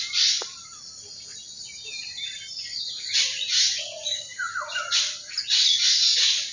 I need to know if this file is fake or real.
real